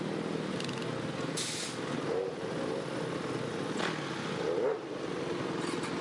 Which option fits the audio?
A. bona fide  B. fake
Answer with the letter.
A